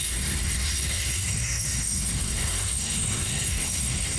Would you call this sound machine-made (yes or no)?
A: yes